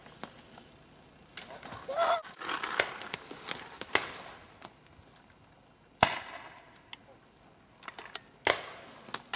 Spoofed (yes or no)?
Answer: no